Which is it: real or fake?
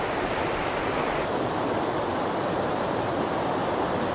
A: real